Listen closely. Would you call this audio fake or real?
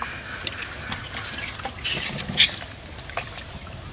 real